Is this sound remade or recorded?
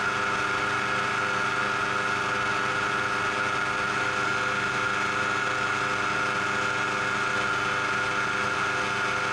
recorded